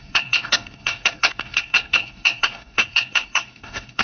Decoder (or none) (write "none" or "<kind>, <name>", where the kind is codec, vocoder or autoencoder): codec, SNAC